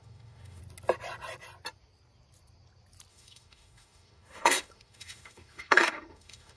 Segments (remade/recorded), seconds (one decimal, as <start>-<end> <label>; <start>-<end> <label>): 0.0-0.6 remade; 0.6-3.1 recorded; 3.1-6.6 remade